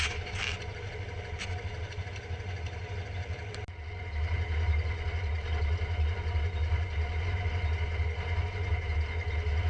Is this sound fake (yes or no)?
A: no